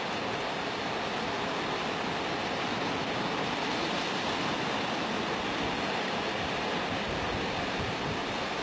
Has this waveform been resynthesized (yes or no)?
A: no